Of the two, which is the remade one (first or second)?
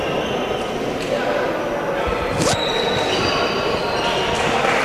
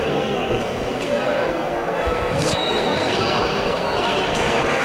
second